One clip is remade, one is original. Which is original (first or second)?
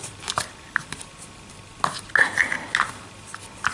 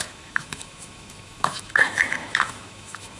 first